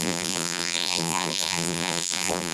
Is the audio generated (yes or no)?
yes